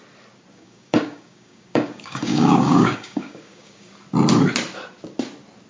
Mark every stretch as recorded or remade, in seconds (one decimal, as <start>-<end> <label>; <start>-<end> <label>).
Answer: 0.0-0.5 recorded; 0.5-3.9 remade; 3.9-5.7 recorded